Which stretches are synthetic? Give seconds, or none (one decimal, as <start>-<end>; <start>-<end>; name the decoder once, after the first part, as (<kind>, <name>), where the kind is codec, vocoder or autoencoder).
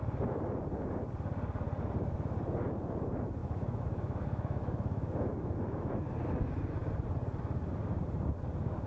3.4-5.9 (autoencoder, DAC-VAE)